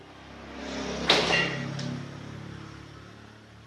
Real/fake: real